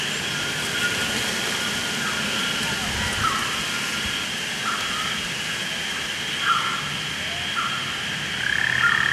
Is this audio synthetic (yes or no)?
no